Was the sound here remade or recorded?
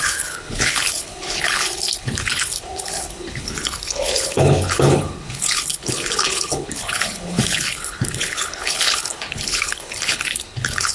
remade